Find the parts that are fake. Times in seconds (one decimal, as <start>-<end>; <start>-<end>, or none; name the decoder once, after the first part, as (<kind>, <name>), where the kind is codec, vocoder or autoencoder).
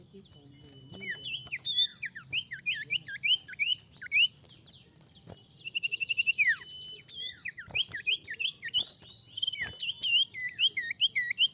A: none